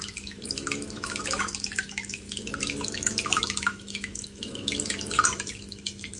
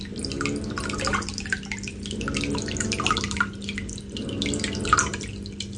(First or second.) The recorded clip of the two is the second